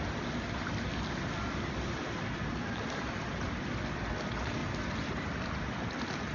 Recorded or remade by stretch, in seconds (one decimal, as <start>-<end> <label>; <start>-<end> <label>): 0.0-0.9 recorded; 0.9-2.4 remade; 2.4-4.6 recorded; 4.6-5.6 remade; 5.6-6.3 recorded